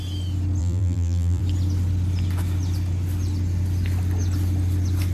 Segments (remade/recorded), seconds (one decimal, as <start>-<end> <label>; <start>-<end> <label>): 0.0-0.6 recorded; 0.6-1.4 remade; 1.4-5.1 recorded